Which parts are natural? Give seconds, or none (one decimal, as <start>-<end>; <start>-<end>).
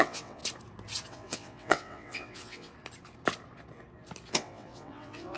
0.4-1.1; 2.7-4.3